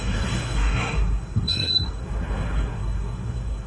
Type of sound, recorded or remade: remade